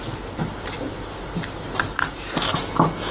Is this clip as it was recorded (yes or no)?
yes